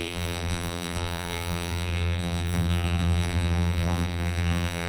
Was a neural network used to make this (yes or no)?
yes